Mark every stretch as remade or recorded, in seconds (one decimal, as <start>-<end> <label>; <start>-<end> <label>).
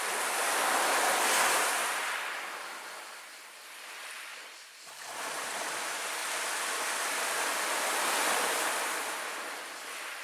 0.0-10.2 recorded